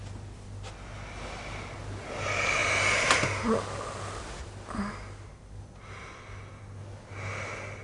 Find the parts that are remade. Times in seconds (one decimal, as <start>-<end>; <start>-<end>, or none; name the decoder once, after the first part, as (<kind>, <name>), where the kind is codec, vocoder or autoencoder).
none

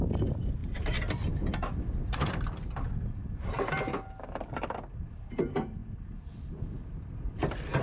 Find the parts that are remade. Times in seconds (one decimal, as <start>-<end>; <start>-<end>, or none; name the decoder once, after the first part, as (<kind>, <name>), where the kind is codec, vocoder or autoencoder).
0.6-2.9 (vocoder, BigVGAN v2)

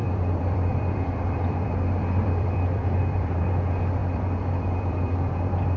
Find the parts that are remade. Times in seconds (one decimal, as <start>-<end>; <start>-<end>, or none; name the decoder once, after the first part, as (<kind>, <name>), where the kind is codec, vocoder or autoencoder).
0.0-3.4 (vocoder, BigVGAN v2); 4.0-5.8

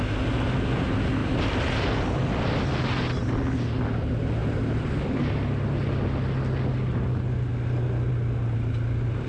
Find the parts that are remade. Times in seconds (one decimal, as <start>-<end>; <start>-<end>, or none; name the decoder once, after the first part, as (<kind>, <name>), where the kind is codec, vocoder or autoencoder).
none